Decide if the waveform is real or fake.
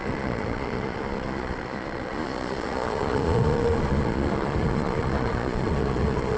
fake